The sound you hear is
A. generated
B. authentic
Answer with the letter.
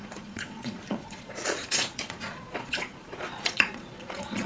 A